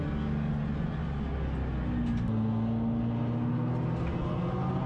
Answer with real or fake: real